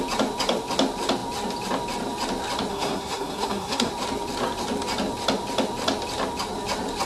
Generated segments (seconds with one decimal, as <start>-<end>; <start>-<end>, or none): 2.7-3.9